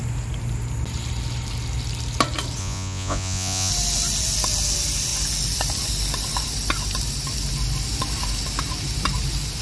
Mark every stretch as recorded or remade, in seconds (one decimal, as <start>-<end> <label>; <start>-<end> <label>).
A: 0.0-2.6 recorded; 2.6-3.7 remade; 3.7-9.6 recorded